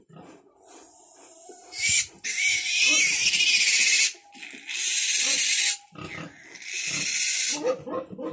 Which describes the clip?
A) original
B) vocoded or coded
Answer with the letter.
A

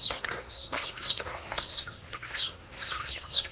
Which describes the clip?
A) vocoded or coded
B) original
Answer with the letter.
A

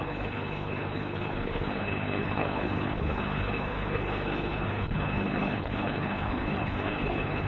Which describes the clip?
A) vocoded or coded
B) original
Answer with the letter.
A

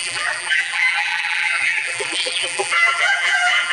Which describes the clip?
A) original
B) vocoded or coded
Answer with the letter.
B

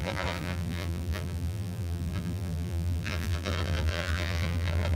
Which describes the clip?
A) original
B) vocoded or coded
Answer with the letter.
B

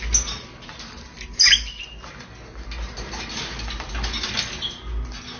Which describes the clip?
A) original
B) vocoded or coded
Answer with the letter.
A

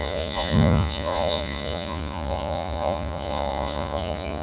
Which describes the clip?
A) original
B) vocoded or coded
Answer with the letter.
B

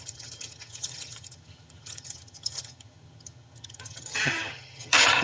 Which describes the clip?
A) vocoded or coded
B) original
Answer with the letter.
A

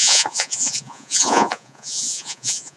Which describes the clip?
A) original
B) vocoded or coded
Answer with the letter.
B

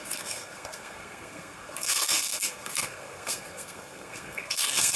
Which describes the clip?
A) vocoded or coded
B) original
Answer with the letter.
A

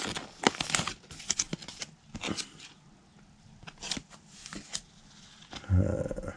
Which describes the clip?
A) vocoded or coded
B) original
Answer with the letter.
B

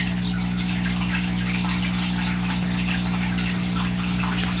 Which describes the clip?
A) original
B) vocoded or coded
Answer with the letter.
A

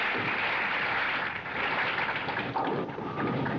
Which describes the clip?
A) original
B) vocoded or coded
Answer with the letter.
A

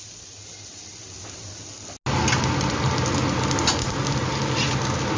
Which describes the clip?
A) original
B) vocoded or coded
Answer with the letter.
A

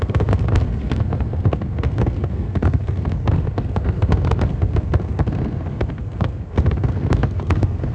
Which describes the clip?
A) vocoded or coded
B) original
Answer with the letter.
A